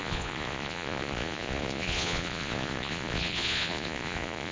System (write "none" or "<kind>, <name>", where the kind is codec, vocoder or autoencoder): vocoder, Vocos